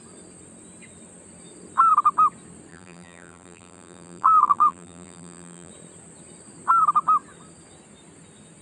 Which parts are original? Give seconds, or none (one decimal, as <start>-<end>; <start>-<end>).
0.0-2.7; 5.7-8.6